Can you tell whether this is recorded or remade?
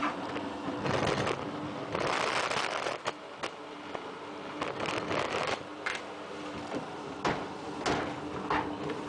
recorded